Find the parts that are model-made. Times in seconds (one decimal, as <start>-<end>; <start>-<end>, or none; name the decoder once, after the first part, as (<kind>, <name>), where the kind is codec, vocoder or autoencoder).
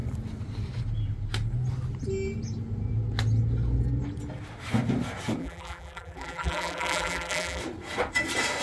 5.4-7.6 (vocoder, BigVGAN v2)